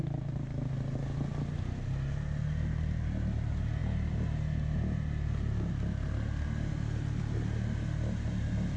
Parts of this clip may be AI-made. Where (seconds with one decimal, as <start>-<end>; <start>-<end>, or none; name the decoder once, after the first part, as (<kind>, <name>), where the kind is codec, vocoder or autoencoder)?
none